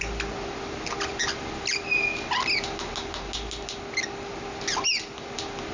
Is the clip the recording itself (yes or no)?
yes